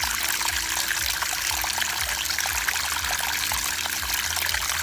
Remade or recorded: recorded